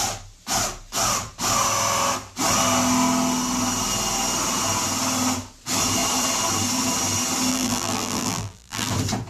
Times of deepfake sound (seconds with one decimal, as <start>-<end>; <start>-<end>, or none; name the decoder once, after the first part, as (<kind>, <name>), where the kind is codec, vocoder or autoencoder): 7.5-8.9 (vocoder, BigVGAN v2)